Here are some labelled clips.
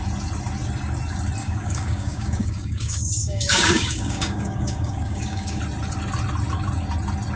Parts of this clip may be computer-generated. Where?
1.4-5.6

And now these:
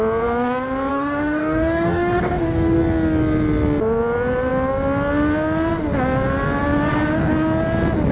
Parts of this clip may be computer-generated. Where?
0.9-2.8

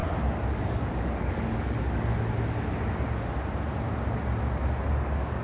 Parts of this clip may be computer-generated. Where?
0.5-2.1; 4.9-5.4